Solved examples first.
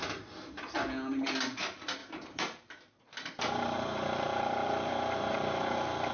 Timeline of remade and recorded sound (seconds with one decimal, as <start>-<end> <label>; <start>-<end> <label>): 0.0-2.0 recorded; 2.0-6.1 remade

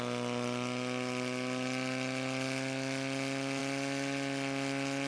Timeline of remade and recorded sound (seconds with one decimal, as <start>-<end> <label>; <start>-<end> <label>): 0.0-5.1 recorded

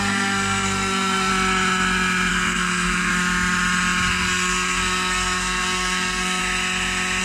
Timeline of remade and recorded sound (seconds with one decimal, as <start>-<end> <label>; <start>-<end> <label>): 0.0-1.3 remade; 1.3-2.3 recorded; 2.3-3.1 remade; 3.1-4.1 recorded; 4.1-6.4 remade; 6.4-7.2 recorded